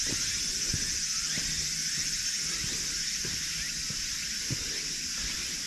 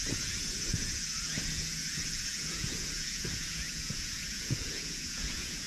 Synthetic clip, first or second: second